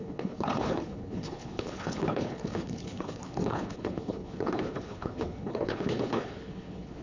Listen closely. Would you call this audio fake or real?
fake